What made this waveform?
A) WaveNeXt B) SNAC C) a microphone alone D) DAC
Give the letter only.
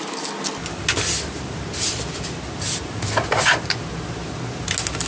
C